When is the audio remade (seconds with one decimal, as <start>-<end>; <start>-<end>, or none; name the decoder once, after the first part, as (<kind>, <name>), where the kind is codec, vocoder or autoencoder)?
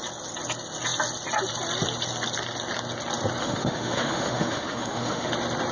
3.4-5.3 (autoencoder, DAC-VAE)